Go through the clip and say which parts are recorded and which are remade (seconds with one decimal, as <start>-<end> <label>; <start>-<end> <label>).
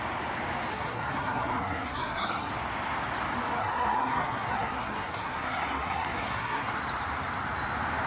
0.0-0.7 recorded; 0.7-2.5 remade; 2.5-3.6 recorded; 3.6-6.7 remade; 6.7-8.1 recorded